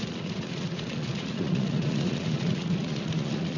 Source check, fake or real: fake